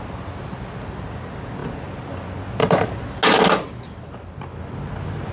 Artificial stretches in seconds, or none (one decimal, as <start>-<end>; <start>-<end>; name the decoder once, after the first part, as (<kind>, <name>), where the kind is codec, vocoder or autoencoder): none